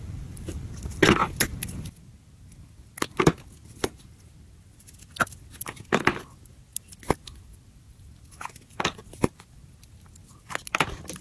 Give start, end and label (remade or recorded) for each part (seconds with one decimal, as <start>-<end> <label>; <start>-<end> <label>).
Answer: 0.0-11.2 recorded